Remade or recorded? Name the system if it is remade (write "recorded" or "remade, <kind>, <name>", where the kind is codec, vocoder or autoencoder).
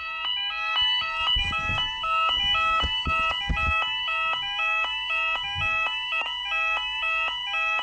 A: recorded